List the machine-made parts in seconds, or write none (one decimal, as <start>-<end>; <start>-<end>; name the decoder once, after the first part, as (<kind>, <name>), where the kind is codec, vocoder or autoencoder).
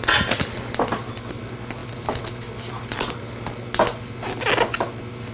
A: none